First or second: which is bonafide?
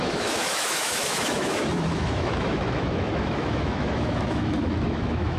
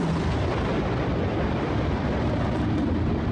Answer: second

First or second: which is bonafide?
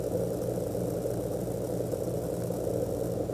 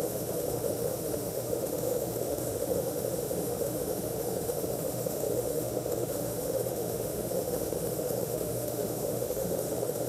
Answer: first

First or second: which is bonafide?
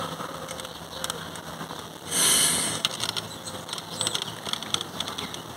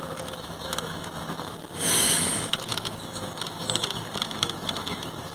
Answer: first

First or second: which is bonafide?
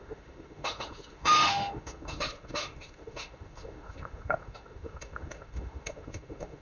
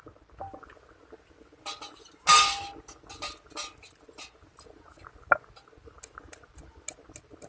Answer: second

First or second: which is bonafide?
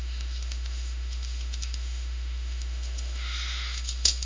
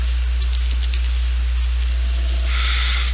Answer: second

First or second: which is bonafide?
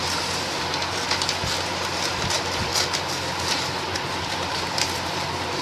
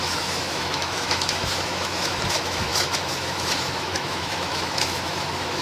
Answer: first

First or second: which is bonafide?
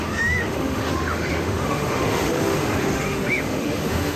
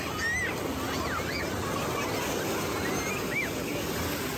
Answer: second